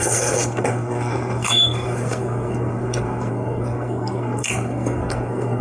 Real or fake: fake